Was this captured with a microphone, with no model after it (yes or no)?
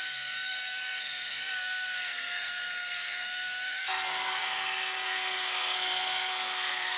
no